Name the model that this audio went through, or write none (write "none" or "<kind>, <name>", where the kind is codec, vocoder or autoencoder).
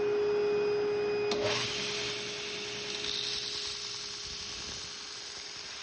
none